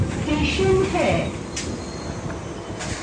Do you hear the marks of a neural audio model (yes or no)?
no